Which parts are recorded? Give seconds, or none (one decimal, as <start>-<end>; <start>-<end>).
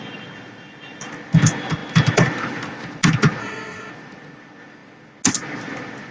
0.0-3.4; 3.9-6.1